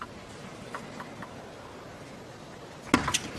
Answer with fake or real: real